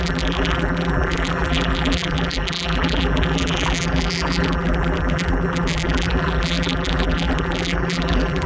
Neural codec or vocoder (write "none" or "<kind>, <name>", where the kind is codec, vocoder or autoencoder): vocoder, BigVGAN v2